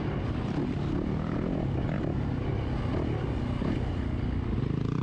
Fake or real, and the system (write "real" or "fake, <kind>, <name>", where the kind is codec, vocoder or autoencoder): real